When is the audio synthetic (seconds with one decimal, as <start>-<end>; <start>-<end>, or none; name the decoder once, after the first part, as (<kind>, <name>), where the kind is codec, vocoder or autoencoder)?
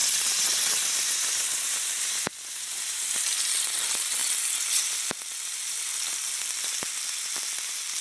0.0-3.1 (vocoder, BigVGAN v2)